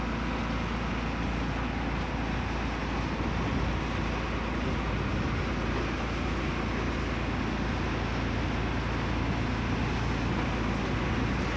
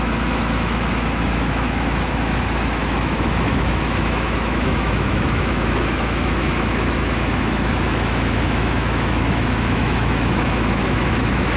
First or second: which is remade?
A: second